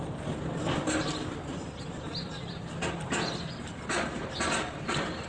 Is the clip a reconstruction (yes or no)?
no